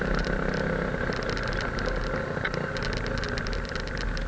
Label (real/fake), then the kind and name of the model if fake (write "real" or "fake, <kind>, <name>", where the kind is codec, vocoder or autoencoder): real